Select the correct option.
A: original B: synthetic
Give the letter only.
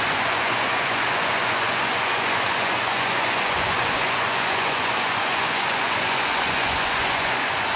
B